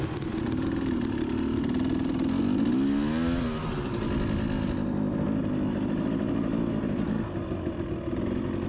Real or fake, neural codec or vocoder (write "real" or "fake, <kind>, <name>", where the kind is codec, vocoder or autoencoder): real